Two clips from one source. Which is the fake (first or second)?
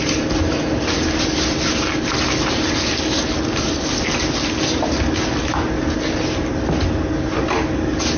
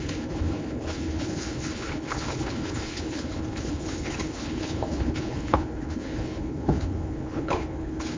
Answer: second